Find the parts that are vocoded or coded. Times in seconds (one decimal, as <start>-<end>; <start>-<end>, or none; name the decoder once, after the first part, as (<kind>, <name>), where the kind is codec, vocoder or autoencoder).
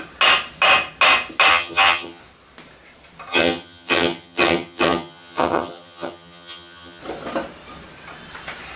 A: 1.5-2.2 (vocoder, HiFi-GAN); 3.3-7.0